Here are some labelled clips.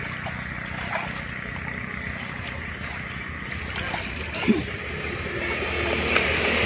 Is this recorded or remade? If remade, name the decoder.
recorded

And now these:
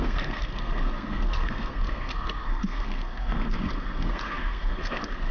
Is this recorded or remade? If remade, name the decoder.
remade, codec, SNAC